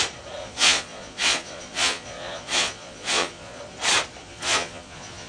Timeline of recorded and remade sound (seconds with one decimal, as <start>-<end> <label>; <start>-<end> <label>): 0.0-0.4 recorded; 0.4-3.6 remade; 3.6-4.2 recorded; 4.2-5.3 remade